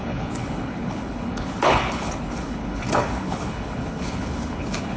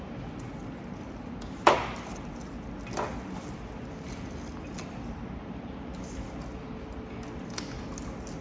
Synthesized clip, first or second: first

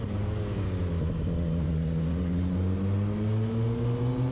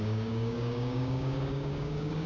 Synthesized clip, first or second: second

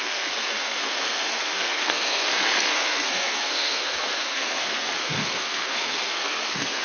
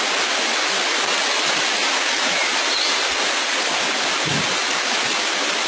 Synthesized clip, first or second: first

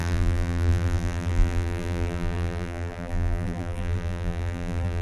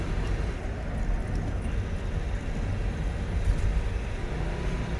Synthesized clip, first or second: first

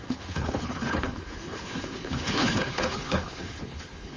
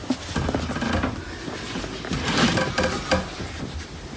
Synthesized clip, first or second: first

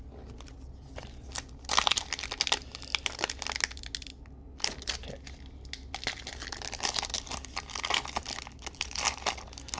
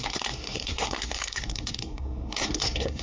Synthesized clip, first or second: second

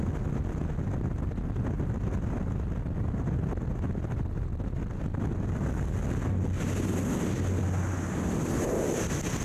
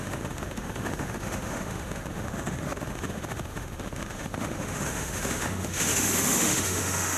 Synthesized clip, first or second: second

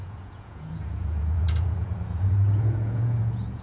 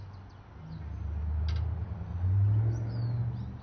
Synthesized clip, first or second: first